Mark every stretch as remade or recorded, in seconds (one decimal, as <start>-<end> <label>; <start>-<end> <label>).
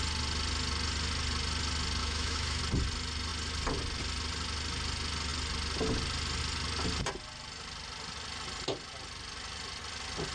0.0-2.0 recorded; 2.0-2.6 remade; 2.6-10.3 recorded